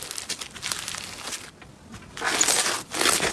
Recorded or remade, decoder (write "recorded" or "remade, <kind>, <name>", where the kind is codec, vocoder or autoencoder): recorded